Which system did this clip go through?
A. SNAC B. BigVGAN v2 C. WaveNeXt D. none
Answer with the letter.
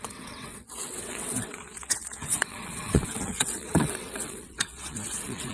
C